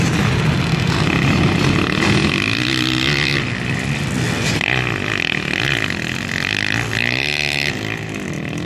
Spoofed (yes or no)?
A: no